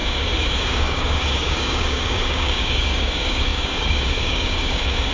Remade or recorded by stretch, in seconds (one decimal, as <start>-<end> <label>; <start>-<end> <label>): 0.0-5.1 remade